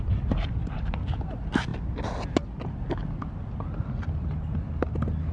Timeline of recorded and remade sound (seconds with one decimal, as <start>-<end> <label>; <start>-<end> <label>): 0.0-5.3 recorded